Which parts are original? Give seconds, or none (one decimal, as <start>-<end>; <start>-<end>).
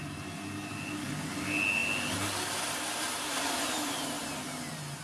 0.0-5.0